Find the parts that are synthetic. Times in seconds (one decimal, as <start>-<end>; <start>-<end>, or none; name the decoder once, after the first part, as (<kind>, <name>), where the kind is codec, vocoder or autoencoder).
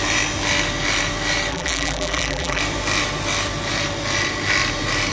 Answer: 1.5-2.6 (vocoder, BigVGAN v2)